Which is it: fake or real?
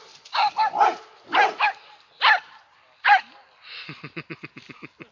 real